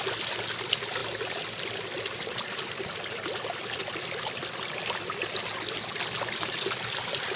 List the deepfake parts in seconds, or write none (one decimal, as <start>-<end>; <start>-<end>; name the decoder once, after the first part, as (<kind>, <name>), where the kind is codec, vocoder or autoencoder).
none